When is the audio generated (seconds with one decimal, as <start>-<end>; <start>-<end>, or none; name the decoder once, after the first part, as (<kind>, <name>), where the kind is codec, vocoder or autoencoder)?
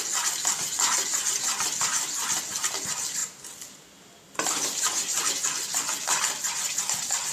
none